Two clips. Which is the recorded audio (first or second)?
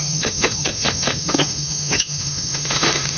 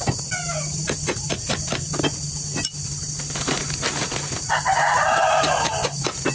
second